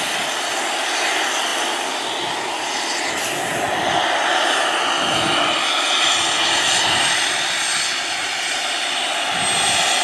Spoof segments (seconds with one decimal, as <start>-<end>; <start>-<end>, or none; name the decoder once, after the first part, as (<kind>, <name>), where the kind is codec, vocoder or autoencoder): none